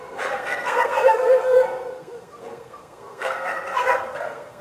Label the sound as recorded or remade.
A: remade